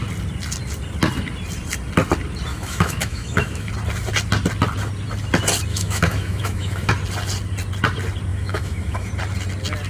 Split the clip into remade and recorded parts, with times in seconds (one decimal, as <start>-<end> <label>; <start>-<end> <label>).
0.0-2.5 recorded; 2.5-3.7 remade; 3.7-5.7 recorded; 5.7-6.9 remade; 6.9-8.3 recorded; 8.3-9.1 remade; 9.1-9.9 recorded

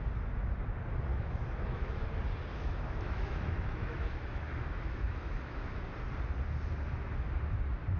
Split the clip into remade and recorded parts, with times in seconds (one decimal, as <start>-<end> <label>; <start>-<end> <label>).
0.0-1.1 recorded; 1.1-2.1 remade; 2.1-2.5 recorded; 2.5-5.9 remade; 5.9-8.0 recorded

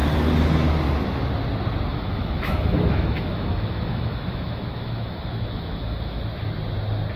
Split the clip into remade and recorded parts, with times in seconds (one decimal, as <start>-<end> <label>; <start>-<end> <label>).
0.0-1.9 recorded; 1.9-6.2 remade; 6.2-7.2 recorded

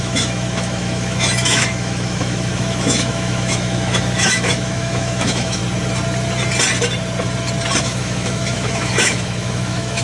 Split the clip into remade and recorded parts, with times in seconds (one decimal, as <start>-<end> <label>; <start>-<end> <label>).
0.0-5.6 remade; 5.6-7.8 recorded; 7.8-10.0 remade

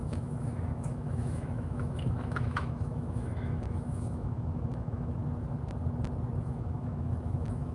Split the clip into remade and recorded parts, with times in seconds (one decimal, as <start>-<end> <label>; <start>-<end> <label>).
0.0-5.2 remade; 5.2-6.4 recorded; 6.4-7.7 remade

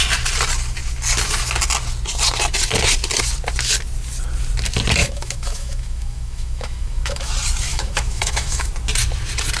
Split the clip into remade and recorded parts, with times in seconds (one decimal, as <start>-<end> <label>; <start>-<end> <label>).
0.0-5.0 recorded; 5.0-7.3 remade; 7.3-7.7 recorded; 7.7-8.7 remade; 8.7-9.6 recorded

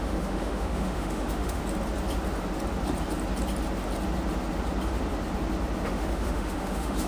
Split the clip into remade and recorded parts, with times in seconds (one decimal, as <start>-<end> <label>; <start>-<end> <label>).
0.0-1.6 remade; 1.6-5.9 recorded; 5.9-7.1 remade